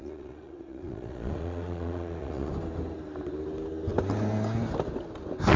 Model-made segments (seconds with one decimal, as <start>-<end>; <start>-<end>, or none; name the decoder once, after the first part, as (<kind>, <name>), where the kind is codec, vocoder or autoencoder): 0.0-2.5 (vocoder, Vocos)